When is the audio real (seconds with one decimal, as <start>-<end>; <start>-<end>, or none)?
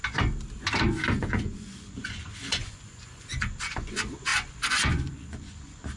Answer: 0.0-1.2